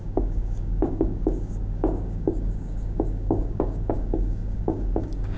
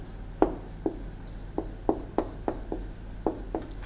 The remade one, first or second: first